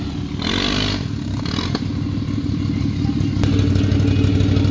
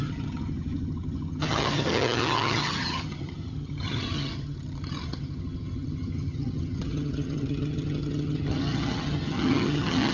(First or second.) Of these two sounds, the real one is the first